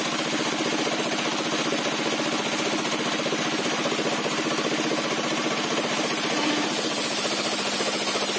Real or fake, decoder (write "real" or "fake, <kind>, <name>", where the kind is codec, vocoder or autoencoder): real